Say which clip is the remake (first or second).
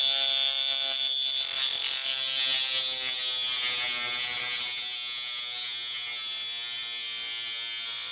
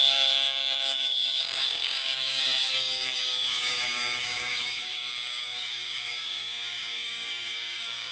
second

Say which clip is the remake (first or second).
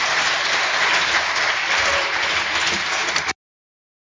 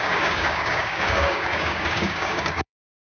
second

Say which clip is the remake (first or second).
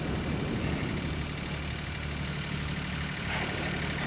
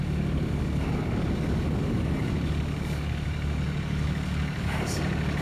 second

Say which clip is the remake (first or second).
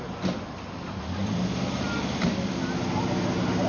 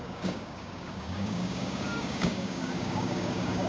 second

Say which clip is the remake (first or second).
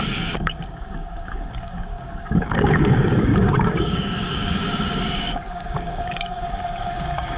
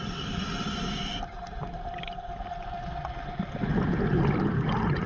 first